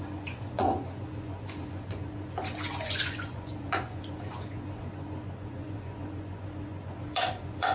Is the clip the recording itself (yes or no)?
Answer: no